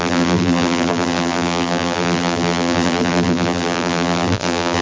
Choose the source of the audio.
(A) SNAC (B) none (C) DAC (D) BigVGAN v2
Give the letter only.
D